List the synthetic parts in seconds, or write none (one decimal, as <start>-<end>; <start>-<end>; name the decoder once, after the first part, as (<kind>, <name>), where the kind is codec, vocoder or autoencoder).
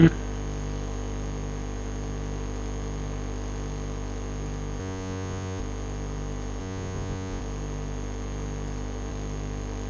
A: 4.8-5.6 (vocoder, Vocos); 6.6-7.4